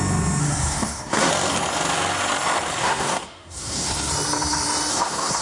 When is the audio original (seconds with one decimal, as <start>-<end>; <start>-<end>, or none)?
0.0-0.4; 1.3-2.8; 4.1-4.9